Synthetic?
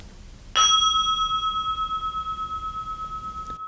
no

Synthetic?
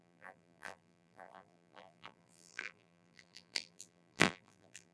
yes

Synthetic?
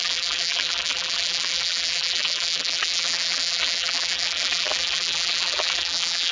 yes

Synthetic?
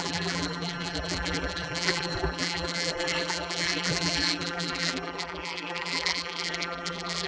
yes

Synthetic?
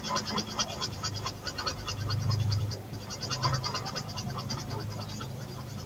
yes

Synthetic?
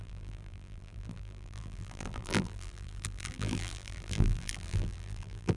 yes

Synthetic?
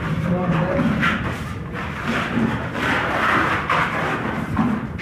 yes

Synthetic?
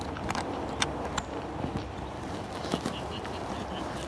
yes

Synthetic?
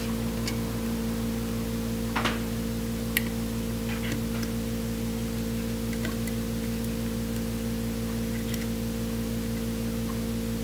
no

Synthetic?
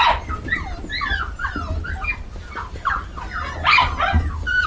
no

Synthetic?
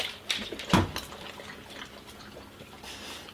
no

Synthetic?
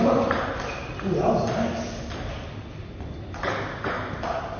no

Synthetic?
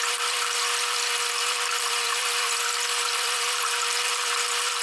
yes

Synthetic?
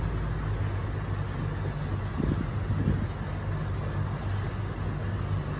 no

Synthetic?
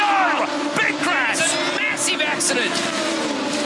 no